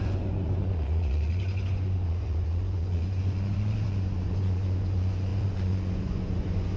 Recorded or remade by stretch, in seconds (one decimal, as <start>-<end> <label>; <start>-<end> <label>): 0.0-6.8 remade